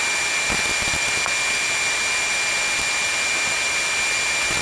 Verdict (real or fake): real